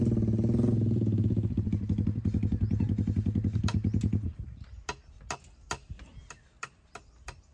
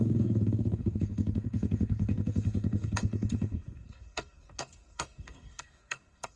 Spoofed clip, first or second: second